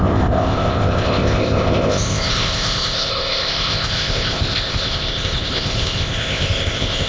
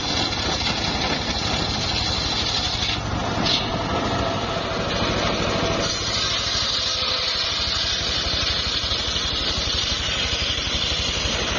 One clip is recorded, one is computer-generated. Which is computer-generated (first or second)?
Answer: first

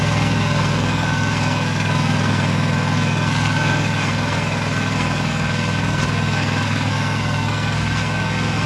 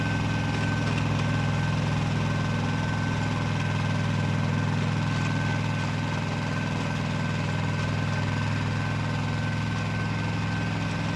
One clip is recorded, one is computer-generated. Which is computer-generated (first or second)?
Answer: first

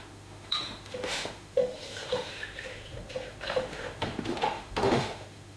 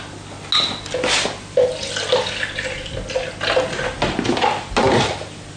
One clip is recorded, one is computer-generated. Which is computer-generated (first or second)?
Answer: first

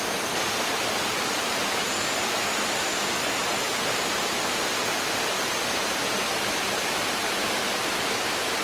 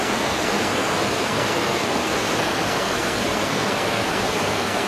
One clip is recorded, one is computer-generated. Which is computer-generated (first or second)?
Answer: second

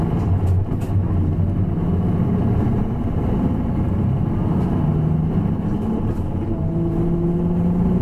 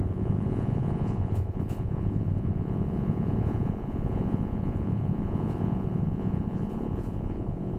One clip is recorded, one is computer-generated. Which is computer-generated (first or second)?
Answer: second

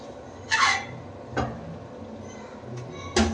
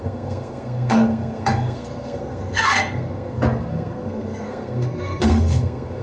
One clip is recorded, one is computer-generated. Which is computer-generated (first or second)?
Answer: second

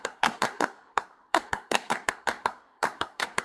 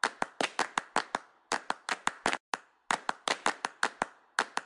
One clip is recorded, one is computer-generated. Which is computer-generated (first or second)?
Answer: first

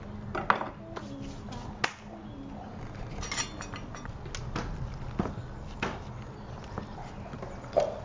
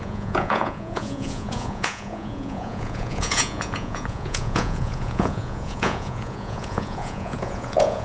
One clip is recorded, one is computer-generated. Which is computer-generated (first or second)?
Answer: second